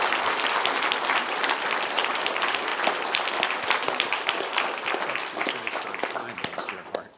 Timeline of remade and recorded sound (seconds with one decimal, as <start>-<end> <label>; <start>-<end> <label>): 0.0-7.2 recorded

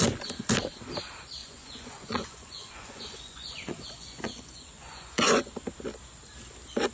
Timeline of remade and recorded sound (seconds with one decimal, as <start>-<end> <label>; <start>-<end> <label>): 0.0-1.4 recorded; 1.4-5.5 remade; 5.5-6.9 recorded

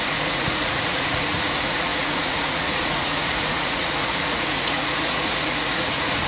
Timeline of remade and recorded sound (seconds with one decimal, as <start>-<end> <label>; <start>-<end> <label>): 0.0-6.3 remade

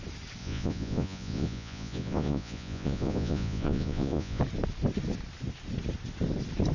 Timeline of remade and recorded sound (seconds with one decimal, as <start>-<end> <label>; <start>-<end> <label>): 0.0-0.4 recorded; 0.4-4.4 remade; 4.4-6.7 recorded

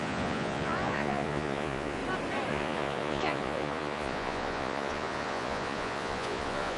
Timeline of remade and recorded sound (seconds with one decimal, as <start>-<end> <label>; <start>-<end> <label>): 0.0-2.0 remade; 2.0-2.5 recorded; 2.5-6.8 remade

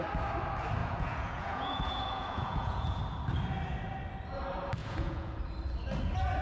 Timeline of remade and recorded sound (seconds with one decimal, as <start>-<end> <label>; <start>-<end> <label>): 0.0-0.8 recorded; 0.8-3.0 remade; 3.0-4.8 recorded; 4.8-5.4 remade; 5.4-6.4 recorded

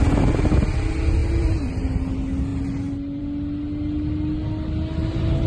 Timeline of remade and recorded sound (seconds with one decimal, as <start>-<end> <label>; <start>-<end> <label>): 0.0-5.5 recorded

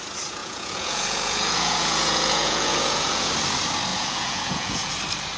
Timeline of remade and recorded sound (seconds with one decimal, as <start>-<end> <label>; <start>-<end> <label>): 0.0-0.4 recorded; 0.4-3.3 remade; 3.3-3.9 recorded; 3.9-4.9 remade; 4.9-5.4 recorded